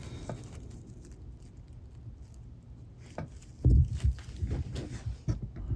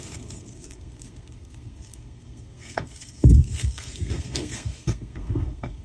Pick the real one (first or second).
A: first